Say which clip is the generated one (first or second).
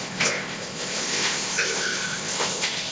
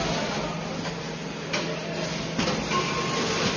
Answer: first